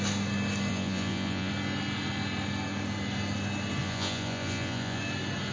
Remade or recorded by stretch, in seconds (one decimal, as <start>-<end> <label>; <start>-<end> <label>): 0.0-0.7 recorded; 0.7-1.5 remade; 1.5-3.8 recorded; 3.8-5.0 remade; 5.0-5.5 recorded